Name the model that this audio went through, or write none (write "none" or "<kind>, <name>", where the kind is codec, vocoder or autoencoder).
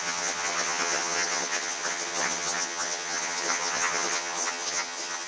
vocoder, HiFi-GAN